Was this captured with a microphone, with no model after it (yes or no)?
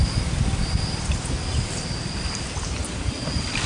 yes